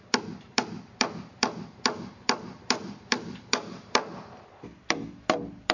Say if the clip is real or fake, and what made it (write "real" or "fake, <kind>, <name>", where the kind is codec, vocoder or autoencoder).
fake, vocoder, BigVGAN v2